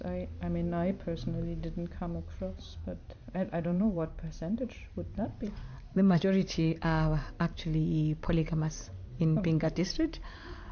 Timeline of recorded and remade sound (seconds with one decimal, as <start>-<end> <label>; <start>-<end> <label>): 0.0-3.2 recorded; 3.2-4.1 remade; 4.1-5.1 recorded; 5.1-6.2 remade; 6.2-10.7 recorded